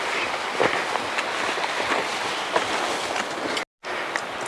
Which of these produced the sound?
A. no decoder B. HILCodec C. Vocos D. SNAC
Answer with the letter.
A